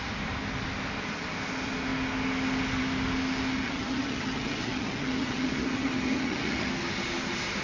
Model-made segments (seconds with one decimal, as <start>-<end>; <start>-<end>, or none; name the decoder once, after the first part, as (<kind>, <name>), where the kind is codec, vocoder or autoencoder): 3.6-6.7 (vocoder, HiFi-GAN)